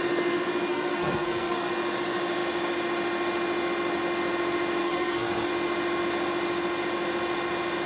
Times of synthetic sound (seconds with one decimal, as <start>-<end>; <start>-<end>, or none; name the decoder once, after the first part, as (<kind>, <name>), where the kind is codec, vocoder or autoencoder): 0.7-1.7 (codec, SNAC); 4.8-5.5